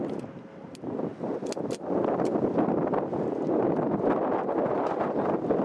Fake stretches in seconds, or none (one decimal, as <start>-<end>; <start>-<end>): none